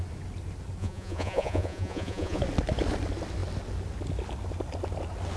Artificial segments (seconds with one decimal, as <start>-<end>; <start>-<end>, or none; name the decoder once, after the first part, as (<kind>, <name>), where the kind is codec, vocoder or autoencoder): 0.8-2.4 (vocoder, Vocos)